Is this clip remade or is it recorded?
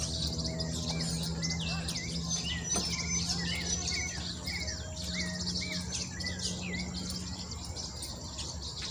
recorded